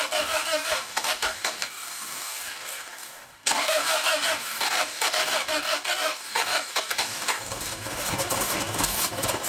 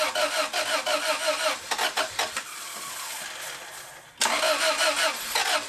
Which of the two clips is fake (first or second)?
first